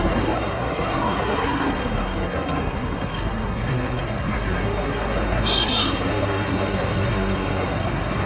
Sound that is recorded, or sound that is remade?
remade